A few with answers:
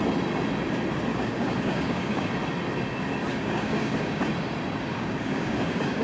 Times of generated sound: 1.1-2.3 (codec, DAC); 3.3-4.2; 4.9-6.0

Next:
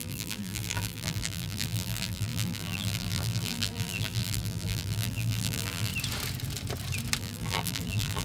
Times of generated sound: 0.0-5.9 (vocoder, BigVGAN v2); 7.2-8.2

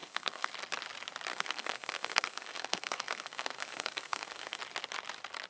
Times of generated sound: 0.0-0.5 (codec, SNAC); 1.3-4.6